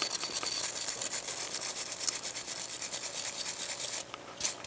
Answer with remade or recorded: recorded